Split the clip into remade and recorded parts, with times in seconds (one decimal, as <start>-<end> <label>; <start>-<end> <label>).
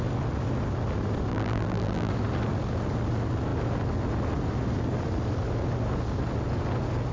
0.0-1.3 recorded; 1.3-2.1 remade; 2.1-7.1 recorded